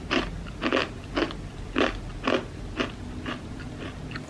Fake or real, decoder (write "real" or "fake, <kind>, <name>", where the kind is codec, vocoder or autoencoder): real